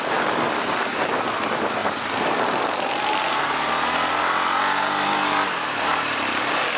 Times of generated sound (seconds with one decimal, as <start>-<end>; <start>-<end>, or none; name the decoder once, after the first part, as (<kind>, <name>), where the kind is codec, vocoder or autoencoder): 1.8-3.1 (vocoder, BigVGAN v2)